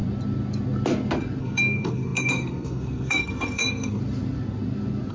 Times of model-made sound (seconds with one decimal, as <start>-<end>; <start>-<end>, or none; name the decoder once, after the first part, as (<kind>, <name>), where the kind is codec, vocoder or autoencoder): 1.4-4.0 (codec, SNAC)